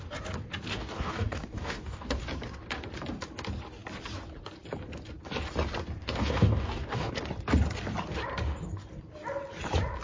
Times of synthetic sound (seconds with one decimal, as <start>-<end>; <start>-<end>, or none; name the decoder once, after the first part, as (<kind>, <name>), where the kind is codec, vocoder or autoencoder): 0.7-2.2 (codec, DAC); 6.0-7.1